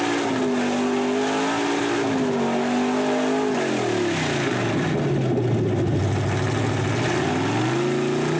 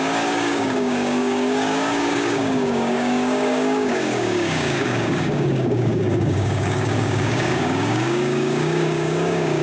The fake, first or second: second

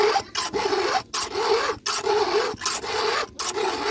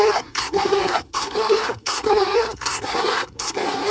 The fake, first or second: second